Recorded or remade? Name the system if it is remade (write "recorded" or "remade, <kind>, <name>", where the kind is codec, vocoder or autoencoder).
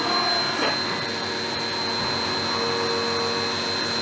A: recorded